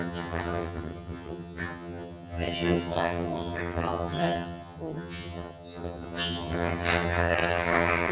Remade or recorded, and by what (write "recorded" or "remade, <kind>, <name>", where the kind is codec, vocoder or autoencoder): remade, vocoder, HiFi-GAN